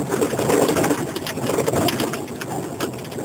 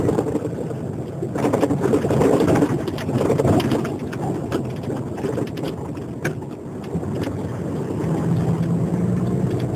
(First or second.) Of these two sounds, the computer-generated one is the second